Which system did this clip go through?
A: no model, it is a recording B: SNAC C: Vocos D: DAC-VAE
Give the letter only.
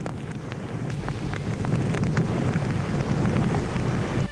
A